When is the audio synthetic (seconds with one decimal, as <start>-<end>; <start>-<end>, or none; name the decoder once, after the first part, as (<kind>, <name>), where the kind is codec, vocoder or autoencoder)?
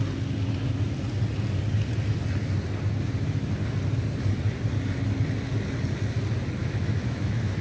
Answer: 6.6-7.6 (autoencoder, DAC-VAE)